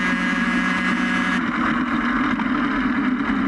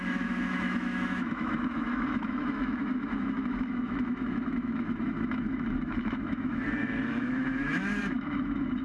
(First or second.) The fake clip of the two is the second